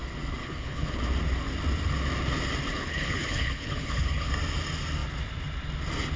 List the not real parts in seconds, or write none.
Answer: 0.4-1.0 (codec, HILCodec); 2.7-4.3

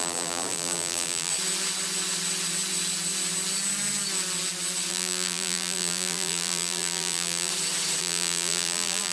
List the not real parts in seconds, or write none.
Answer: 0.0-1.3 (vocoder, BigVGAN v2); 4.9-7.5; 8.0-9.1